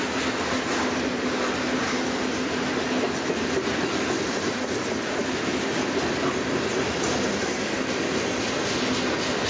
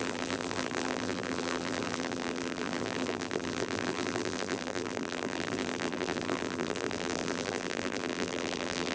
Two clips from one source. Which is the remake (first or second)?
second